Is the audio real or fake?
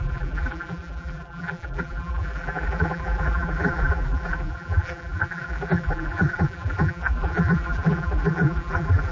fake